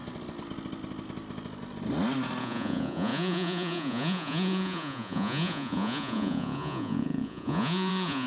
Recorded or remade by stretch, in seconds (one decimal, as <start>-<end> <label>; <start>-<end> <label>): 0.0-2.4 recorded; 2.4-8.3 remade